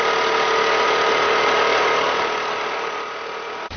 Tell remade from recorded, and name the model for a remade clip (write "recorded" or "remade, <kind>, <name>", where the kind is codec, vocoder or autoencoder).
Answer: recorded